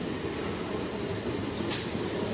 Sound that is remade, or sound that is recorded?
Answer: recorded